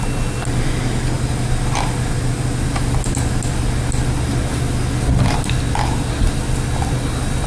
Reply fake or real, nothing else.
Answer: real